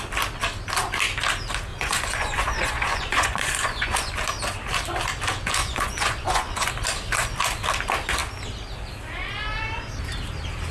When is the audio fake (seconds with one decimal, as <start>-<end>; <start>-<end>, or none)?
1.7-4.1; 5.6-6.7